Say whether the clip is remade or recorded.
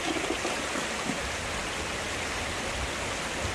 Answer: recorded